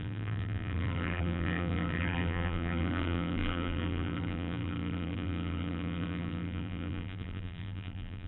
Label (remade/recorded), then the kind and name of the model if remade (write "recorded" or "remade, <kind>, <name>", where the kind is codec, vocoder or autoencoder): remade, vocoder, BigVGAN v2